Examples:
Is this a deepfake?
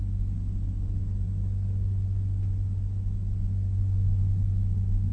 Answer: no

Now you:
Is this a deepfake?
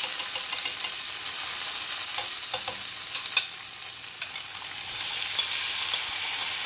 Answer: no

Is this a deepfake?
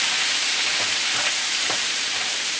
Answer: yes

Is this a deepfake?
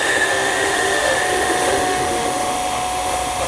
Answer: yes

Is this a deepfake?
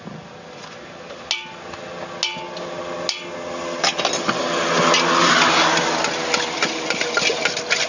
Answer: no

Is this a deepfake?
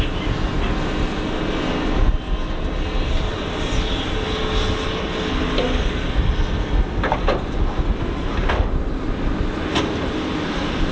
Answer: no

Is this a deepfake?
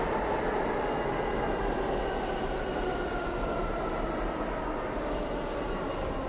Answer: no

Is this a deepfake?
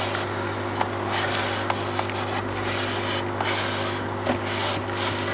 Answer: no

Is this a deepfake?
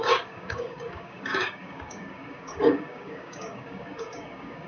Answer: yes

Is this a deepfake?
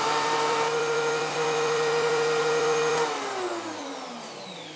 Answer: yes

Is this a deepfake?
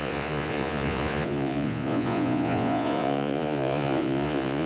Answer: yes